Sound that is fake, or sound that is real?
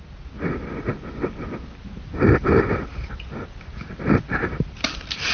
real